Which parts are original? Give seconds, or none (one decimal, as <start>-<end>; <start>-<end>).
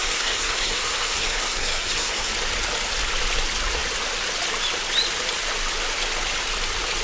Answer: 2.3-7.0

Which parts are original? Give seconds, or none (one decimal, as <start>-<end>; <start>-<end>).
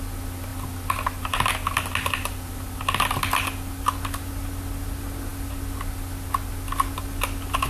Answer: 0.0-7.7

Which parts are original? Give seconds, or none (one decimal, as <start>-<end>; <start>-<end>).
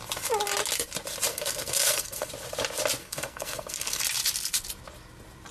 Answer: 0.0-1.3; 2.3-3.0; 4.0-5.5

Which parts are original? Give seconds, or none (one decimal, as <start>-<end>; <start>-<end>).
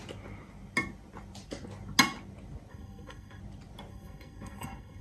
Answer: 0.0-2.7; 3.4-3.9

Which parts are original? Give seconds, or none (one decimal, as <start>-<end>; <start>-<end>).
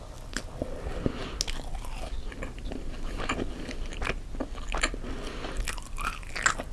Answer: 0.0-6.7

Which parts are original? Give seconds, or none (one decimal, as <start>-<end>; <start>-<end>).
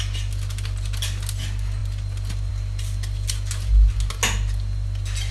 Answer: 0.0-5.3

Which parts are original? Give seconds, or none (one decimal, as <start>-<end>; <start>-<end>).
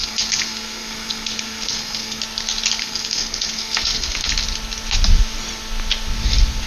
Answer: 2.2-2.8; 4.3-6.7